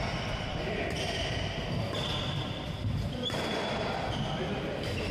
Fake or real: real